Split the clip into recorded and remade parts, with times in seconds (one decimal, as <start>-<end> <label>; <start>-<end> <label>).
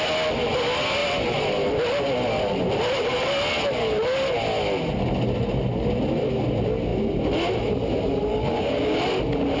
0.0-8.3 recorded; 8.3-9.0 remade; 9.0-9.6 recorded